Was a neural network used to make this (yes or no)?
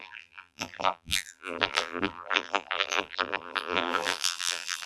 yes